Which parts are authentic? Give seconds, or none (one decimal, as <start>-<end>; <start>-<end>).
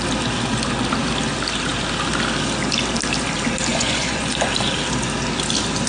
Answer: 0.0-3.7; 4.5-5.9